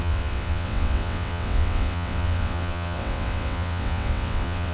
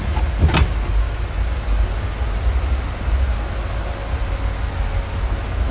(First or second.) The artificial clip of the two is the first